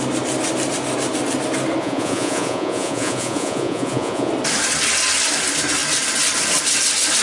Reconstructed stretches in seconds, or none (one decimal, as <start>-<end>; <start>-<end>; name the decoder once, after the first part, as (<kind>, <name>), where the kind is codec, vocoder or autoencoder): 1.8-4.3 (vocoder, Vocos)